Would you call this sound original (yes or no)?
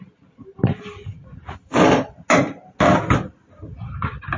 yes